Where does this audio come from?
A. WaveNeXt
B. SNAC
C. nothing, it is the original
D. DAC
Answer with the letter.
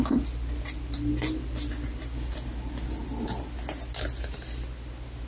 C